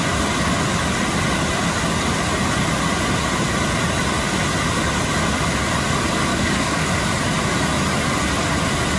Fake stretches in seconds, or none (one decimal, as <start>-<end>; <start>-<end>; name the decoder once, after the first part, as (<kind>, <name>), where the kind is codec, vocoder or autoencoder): 6.3-6.9 (codec, DAC)